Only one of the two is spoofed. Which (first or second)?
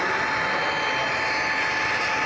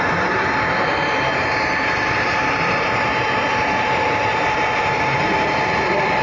second